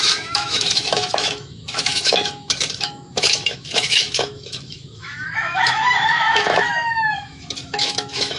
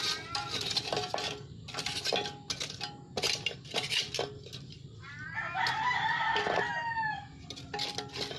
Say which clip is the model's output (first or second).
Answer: first